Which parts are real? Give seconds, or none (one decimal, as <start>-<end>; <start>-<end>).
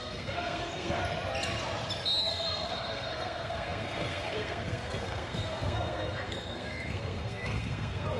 1.0-2.2